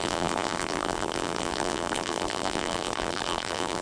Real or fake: fake